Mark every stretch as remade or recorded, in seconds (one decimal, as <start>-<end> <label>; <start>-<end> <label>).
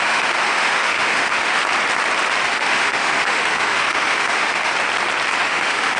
0.0-1.6 remade; 1.6-2.4 recorded; 2.4-4.7 remade; 4.7-5.4 recorded; 5.4-6.0 remade